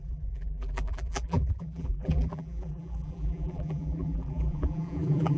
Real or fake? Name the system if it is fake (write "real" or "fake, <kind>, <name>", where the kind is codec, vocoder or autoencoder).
fake, vocoder, BigVGAN v2